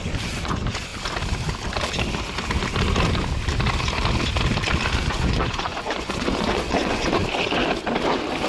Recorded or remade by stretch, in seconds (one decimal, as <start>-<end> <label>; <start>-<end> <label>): 0.0-0.9 remade; 0.9-5.1 recorded; 5.1-7.2 remade; 7.2-8.5 recorded